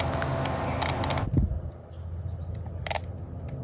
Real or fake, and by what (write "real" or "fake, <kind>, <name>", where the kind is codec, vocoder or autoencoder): real